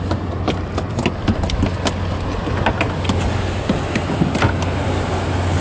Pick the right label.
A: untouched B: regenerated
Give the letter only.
A